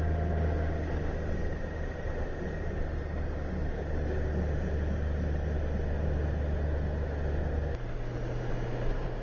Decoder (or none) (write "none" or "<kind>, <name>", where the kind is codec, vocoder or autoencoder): none